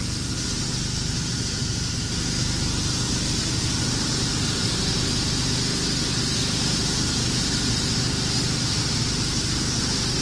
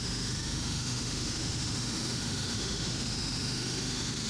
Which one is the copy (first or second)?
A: second